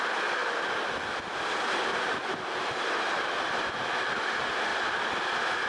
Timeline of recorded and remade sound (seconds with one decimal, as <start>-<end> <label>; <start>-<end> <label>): 0.0-0.4 recorded; 0.4-1.0 remade; 1.0-1.9 recorded; 1.9-3.7 remade; 3.7-5.7 recorded